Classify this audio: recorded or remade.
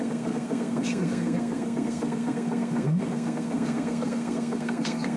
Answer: remade